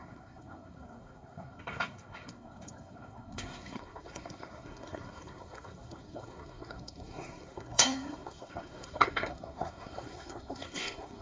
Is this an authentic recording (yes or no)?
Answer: no